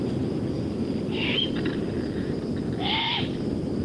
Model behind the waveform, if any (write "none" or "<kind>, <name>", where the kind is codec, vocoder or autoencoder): none